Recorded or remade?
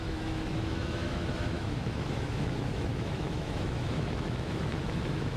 remade